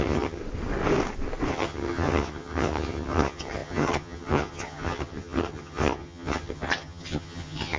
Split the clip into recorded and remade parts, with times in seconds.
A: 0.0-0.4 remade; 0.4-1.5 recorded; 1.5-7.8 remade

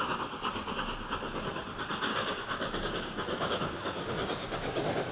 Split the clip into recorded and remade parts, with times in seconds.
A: 0.0-2.1 recorded; 2.1-5.1 remade

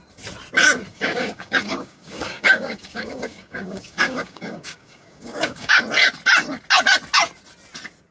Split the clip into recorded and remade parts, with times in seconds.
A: 0.0-0.9 recorded; 0.9-5.8 remade; 5.8-8.1 recorded